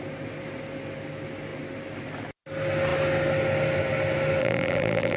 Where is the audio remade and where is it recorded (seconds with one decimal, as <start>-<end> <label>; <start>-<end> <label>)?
0.0-4.4 recorded; 4.4-5.2 remade